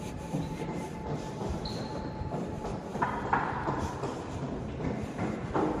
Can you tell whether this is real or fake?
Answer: real